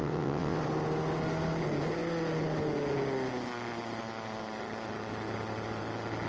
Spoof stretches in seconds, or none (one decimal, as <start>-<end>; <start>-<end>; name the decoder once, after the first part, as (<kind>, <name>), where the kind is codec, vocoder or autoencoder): 0.0-0.6 (vocoder, WaveNeXt)